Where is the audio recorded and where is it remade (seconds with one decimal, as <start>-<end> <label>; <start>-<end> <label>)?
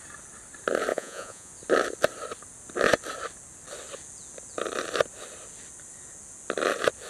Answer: 0.0-0.9 recorded; 0.9-1.5 remade; 1.5-7.1 recorded